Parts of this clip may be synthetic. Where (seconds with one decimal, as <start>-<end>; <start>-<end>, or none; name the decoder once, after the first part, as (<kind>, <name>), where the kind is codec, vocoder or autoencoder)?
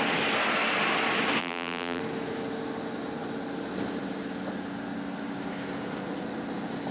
1.4-2.0 (vocoder, BigVGAN v2)